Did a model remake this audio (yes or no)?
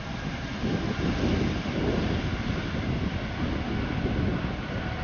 no